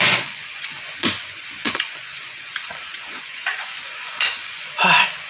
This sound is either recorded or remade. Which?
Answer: remade